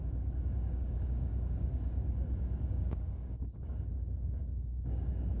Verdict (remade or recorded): remade